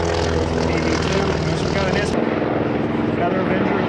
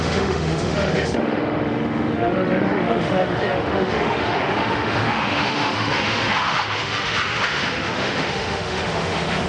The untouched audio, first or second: first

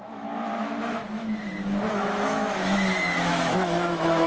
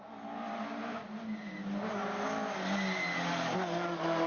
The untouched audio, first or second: second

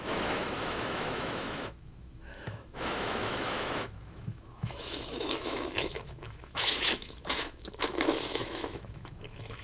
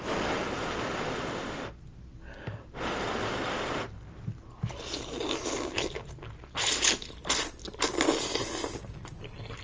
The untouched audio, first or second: second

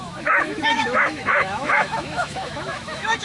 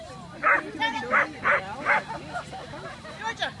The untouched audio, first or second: second